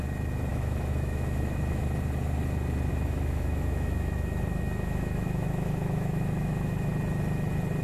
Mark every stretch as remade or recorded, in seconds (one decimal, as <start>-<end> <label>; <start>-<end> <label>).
0.0-0.5 recorded; 0.5-1.8 remade; 1.8-2.9 recorded; 2.9-6.9 remade; 6.9-7.8 recorded